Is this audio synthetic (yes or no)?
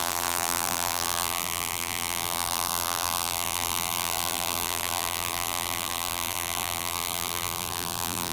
yes